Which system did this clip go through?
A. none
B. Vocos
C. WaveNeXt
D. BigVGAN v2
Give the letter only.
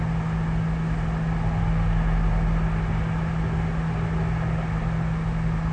A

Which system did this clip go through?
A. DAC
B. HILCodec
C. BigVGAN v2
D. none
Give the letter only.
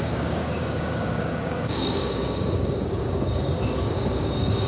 A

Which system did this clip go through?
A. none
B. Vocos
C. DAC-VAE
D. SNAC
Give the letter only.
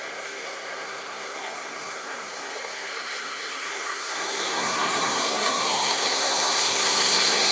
D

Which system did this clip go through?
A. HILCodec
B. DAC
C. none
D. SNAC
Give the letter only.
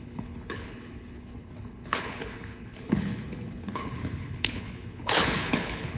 A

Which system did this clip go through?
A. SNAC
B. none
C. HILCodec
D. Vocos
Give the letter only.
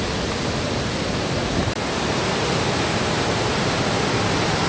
B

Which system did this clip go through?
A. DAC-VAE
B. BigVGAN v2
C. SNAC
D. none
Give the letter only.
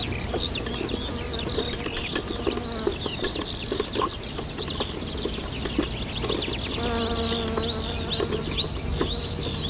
D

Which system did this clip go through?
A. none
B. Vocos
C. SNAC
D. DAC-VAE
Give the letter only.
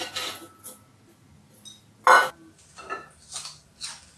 A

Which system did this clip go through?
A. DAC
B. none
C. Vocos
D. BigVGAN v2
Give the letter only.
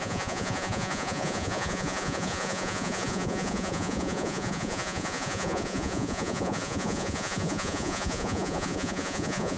C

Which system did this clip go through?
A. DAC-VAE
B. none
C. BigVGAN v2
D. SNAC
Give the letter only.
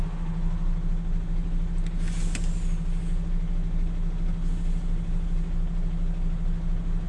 B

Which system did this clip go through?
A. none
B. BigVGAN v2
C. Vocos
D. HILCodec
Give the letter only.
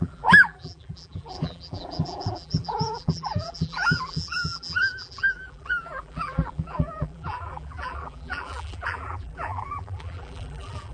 B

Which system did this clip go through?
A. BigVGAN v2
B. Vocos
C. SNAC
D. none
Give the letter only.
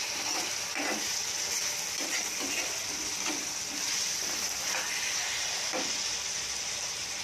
D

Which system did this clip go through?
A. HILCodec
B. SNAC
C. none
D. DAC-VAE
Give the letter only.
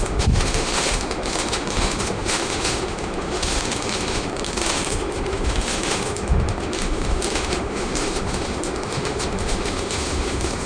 D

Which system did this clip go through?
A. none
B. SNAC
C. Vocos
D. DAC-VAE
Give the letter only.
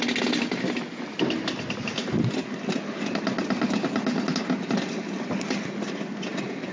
A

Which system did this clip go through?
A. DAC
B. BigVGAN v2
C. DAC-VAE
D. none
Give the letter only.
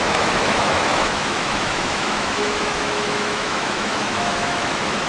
C